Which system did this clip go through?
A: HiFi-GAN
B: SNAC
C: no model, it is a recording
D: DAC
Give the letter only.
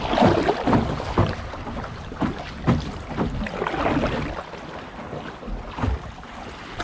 C